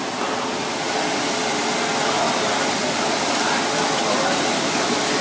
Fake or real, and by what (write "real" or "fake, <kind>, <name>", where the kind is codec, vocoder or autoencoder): real